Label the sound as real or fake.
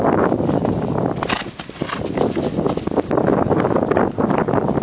real